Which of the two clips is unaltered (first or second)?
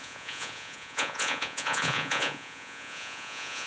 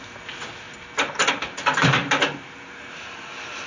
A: second